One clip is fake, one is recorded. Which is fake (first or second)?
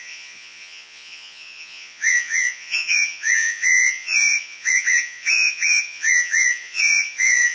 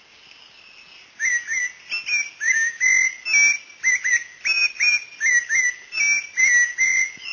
first